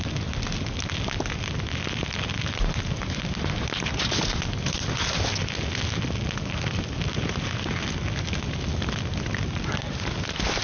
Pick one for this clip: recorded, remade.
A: recorded